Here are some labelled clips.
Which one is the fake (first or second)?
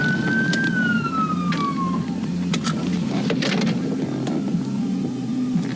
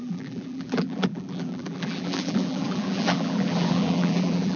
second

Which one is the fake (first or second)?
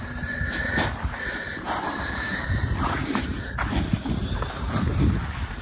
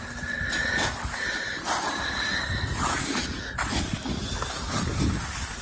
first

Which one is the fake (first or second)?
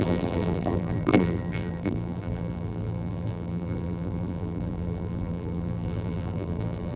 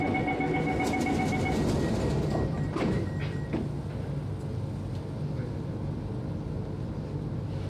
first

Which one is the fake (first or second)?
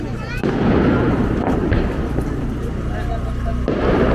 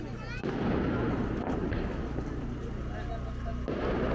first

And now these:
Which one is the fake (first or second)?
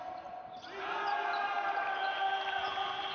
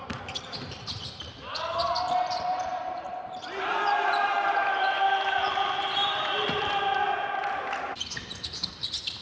second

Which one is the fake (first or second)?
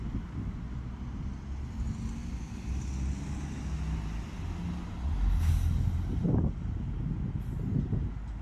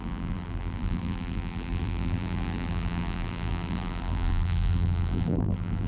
second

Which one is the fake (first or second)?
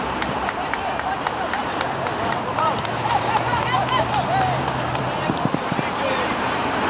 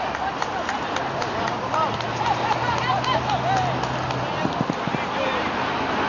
first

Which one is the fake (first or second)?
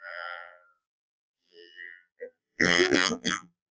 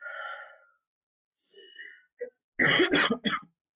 first